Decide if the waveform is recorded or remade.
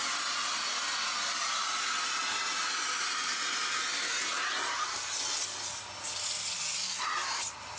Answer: recorded